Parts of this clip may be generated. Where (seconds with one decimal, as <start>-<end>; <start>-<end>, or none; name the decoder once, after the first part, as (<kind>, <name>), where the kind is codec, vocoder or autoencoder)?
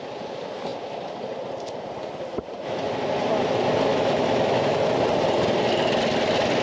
3.9-4.8 (autoencoder, DAC-VAE)